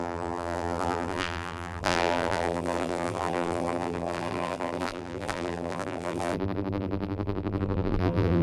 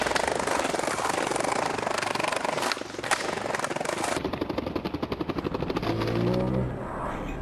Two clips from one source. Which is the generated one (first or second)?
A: first